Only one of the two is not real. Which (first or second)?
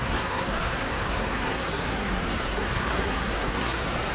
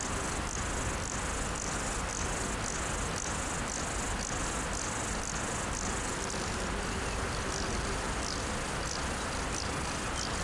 first